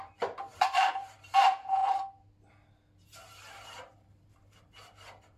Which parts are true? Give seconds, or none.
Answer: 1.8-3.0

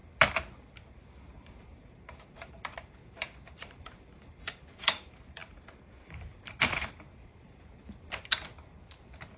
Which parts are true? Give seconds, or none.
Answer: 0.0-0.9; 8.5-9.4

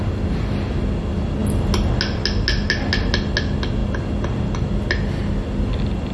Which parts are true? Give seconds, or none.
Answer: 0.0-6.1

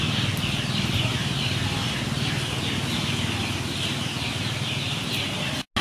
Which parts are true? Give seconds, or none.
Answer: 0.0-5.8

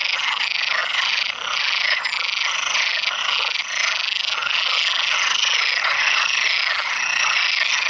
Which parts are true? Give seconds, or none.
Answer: 0.0-0.8; 3.2-7.9